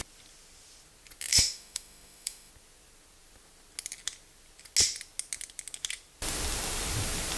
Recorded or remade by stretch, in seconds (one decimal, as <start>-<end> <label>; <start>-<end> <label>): 0.0-1.3 recorded; 1.3-2.5 remade; 2.5-7.4 recorded